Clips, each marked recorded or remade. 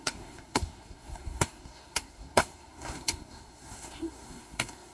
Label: remade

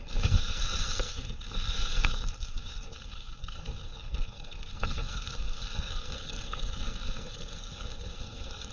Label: remade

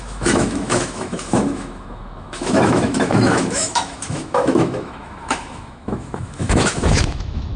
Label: remade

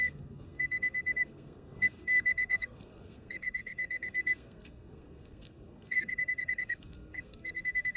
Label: remade